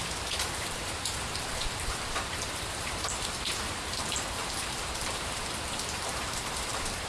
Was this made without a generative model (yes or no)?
no